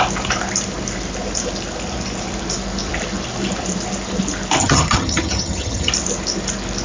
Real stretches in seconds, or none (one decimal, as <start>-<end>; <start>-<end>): 0.0-4.6; 5.9-6.8